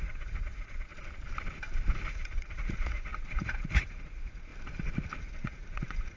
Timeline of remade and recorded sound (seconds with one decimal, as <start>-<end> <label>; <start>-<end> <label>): 0.0-0.9 remade; 0.9-2.1 recorded; 2.1-4.5 remade; 4.5-5.2 recorded; 5.2-6.2 remade